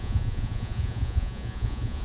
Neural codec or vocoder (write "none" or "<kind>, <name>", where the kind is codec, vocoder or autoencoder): vocoder, Vocos